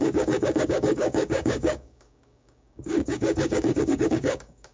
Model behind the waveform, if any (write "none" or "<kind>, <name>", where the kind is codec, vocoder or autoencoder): codec, DAC